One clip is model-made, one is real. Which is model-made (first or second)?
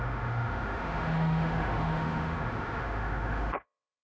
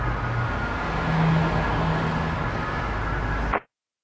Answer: first